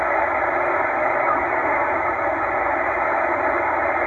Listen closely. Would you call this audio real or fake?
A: real